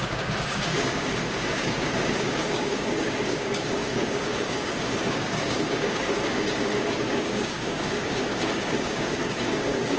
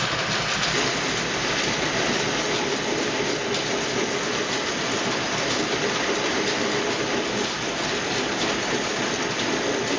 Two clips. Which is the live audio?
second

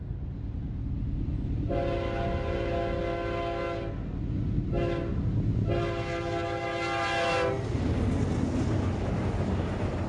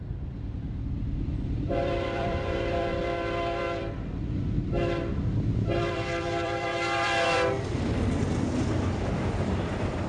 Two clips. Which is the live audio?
first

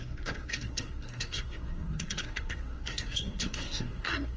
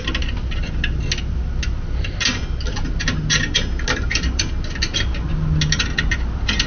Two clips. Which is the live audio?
second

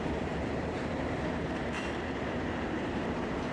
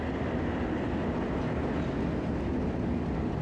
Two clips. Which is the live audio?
second